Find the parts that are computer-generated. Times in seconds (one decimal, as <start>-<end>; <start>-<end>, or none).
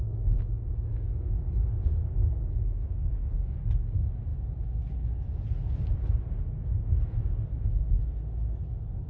none